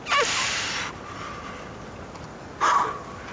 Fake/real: real